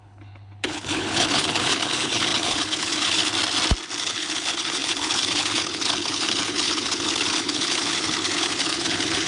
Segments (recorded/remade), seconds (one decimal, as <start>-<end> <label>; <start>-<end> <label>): 0.0-3.3 remade; 3.3-4.0 recorded; 4.0-9.3 remade